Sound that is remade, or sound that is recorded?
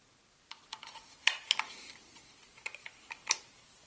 recorded